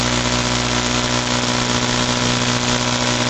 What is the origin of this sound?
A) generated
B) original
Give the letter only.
B